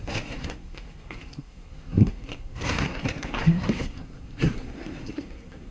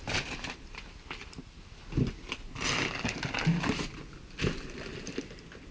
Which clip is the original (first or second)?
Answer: second